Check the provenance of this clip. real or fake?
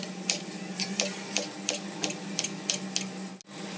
real